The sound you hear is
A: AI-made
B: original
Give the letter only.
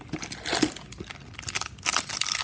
B